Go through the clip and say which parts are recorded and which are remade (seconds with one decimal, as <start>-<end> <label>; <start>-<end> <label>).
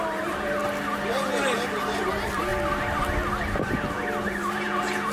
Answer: 0.0-0.6 remade; 0.6-2.0 recorded; 2.0-2.5 remade; 2.5-4.2 recorded; 4.2-5.1 remade